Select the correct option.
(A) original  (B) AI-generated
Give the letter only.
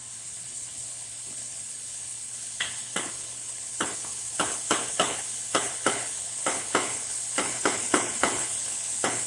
B